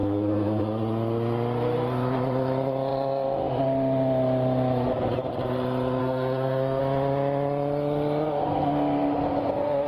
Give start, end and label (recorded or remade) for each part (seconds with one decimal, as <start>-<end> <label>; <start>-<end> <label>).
0.0-0.6 remade; 0.6-6.0 recorded; 6.0-6.8 remade; 6.8-9.9 recorded